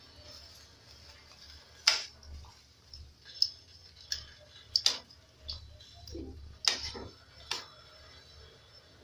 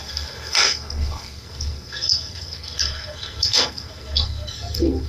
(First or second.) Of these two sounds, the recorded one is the first